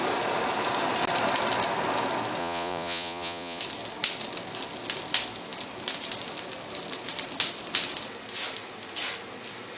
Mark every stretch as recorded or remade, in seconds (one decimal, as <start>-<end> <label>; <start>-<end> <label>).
0.0-2.4 recorded; 2.4-3.6 remade; 3.6-9.8 recorded